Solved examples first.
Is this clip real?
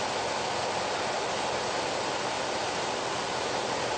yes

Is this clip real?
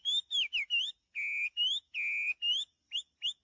yes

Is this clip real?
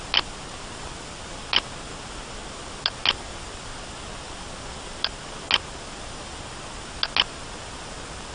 yes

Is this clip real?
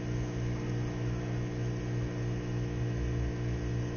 yes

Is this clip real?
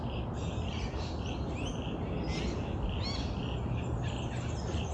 yes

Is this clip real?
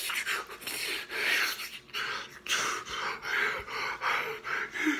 yes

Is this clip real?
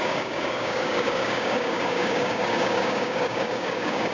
no